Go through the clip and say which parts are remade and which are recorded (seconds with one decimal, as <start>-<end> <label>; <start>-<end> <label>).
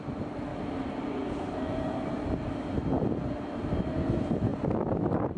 0.0-0.5 recorded; 0.5-2.8 remade; 2.8-5.4 recorded